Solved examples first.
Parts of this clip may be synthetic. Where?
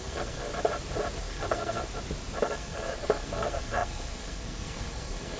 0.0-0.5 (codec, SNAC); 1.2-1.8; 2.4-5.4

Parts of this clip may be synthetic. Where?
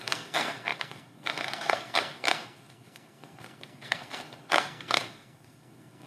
0.0-6.1 (codec, SNAC)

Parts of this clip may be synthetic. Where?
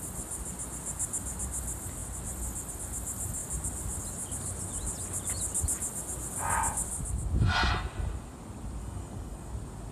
8.8-9.5 (codec, DAC)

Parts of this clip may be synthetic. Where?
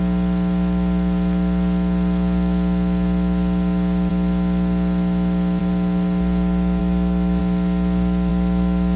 6.8-7.4 (autoencoder, DAC-VAE)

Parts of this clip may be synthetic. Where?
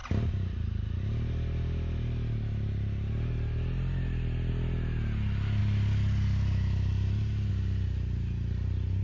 none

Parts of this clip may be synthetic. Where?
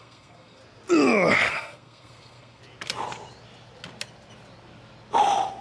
0.0-0.6 (codec, SNAC); 1.5-2.6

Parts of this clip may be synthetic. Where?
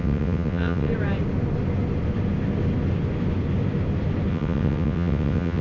0.0-0.9 (vocoder, WaveNeXt); 4.3-5.6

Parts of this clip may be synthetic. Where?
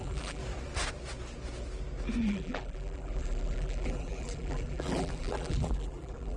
0.0-0.4 (vocoder, BigVGAN v2); 2.2-6.4